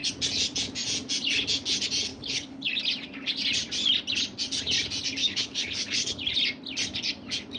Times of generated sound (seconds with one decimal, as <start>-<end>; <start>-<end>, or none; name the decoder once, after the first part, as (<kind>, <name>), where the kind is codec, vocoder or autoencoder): 2.1-2.7 (codec, HILCodec); 5.2-6.2